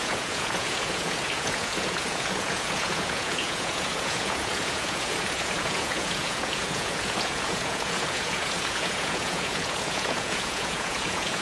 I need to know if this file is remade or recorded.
remade